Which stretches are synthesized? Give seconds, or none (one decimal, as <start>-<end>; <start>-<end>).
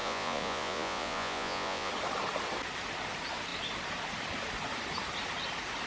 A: 0.0-1.9